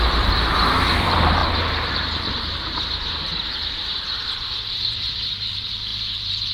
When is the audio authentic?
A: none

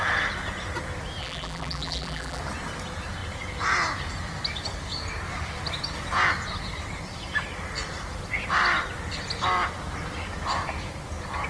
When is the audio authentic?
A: 0.0-1.2; 2.4-11.5

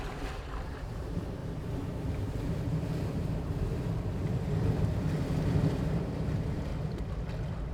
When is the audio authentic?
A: 3.7-5.9; 6.7-7.7

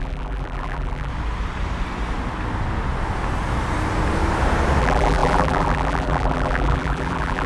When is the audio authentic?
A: 1.1-4.8

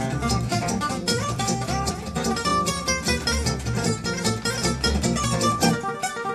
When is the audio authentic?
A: 0.0-0.5; 1.9-6.3

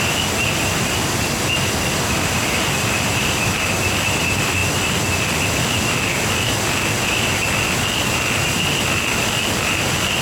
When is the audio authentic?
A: 0.0-10.2

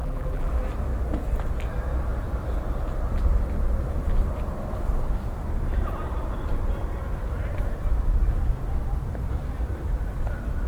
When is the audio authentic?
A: 0.5-10.7

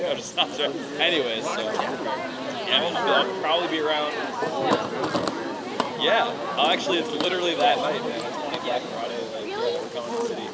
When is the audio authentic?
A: 0.0-7.1